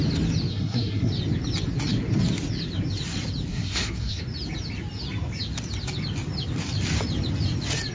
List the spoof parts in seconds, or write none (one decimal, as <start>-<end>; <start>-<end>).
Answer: 0.5-1.1; 3.5-4.2